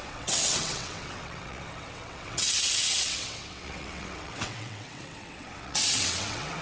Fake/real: fake